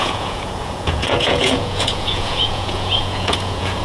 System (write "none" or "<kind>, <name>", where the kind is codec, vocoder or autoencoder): vocoder, Vocos